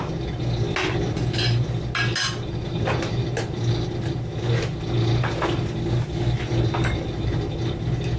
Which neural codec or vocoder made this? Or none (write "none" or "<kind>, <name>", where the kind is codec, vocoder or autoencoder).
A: none